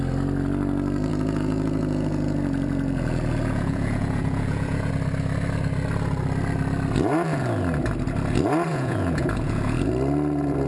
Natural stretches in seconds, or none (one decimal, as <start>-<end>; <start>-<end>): 0.0-1.1; 4.9-8.7; 9.9-10.7

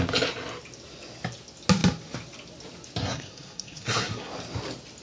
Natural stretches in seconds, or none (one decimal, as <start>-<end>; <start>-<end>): 0.0-3.0; 4.3-5.0

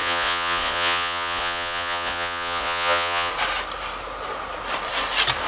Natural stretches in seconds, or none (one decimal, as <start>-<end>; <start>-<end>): 3.3-5.5

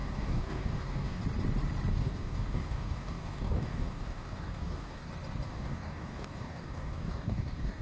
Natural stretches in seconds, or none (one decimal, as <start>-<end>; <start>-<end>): 1.2-1.9; 5.1-5.5

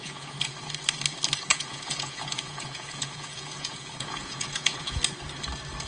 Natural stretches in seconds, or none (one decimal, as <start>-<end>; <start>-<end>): 0.5-1.5; 5.0-5.9

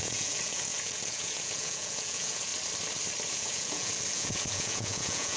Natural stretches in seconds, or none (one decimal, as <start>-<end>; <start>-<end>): 2.5-3.3